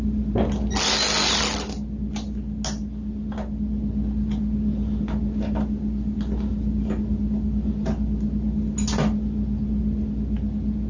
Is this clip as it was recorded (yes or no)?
yes